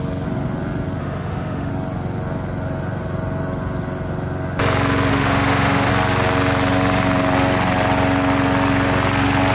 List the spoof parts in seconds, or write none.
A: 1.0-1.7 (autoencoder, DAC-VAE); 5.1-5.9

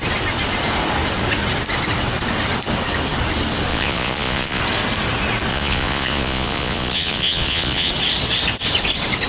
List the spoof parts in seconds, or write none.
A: 3.7-4.6 (vocoder, Vocos); 5.5-7.9

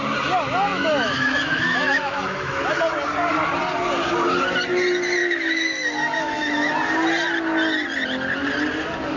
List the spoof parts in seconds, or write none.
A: 0.7-2.6 (autoencoder, DAC-VAE); 5.2-6.7

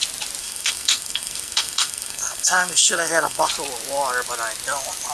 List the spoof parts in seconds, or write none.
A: 0.4-3.5 (codec, SNAC)

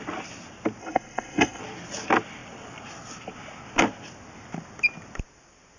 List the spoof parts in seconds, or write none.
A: 0.8-1.6 (codec, SNAC)